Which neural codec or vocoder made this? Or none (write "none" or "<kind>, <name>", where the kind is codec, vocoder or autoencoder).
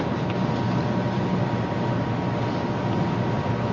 none